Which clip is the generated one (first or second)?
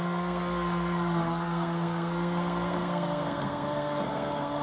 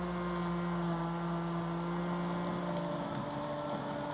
first